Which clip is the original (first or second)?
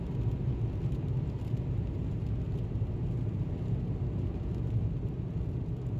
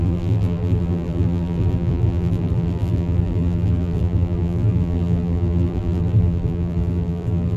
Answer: first